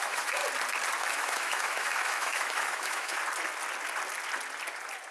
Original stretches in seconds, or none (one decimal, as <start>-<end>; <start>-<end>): 0.4-1.0; 3.2-5.1